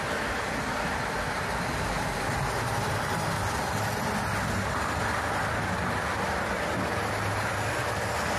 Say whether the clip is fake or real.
real